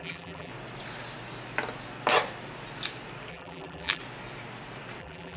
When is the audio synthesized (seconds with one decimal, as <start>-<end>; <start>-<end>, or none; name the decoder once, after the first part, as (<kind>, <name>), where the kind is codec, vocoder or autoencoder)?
0.0-0.5 (vocoder, BigVGAN v2); 3.3-4.0; 5.0-5.4